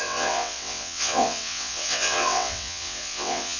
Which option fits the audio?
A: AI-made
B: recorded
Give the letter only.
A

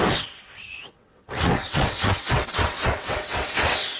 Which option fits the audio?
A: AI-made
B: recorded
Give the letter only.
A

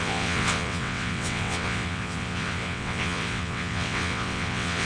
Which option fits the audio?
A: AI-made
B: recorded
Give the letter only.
A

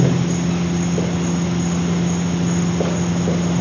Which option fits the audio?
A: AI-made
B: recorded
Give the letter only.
B